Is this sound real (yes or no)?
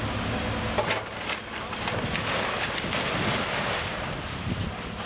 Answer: yes